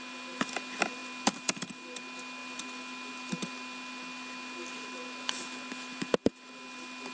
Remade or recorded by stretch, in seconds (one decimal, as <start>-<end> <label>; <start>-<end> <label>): 0.0-7.1 recorded